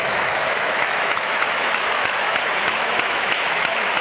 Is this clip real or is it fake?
fake